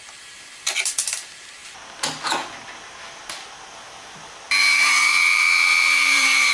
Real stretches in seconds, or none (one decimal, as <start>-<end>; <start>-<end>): 0.0-4.6